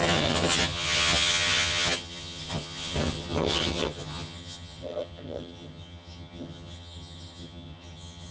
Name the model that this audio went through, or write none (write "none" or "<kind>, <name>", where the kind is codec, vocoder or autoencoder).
vocoder, HiFi-GAN